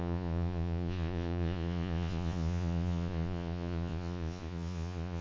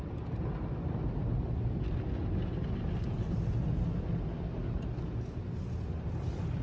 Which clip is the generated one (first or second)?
first